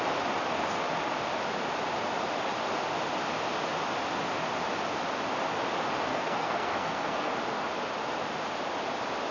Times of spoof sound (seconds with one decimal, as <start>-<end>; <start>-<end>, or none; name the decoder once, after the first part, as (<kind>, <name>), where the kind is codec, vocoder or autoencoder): 6.1-7.3 (codec, SNAC)

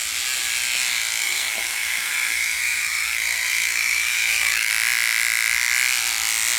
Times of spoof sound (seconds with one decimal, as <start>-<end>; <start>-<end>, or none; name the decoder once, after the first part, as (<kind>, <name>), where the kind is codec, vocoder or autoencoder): 1.2-4.7 (codec, SNAC)